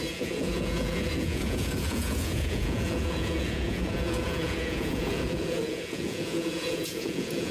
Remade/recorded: remade